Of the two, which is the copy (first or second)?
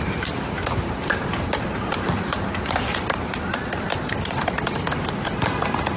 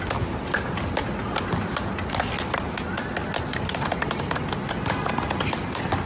first